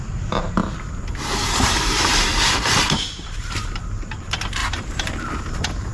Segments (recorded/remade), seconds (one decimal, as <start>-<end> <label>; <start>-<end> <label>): 0.0-0.6 remade; 0.6-1.5 recorded; 1.5-5.9 remade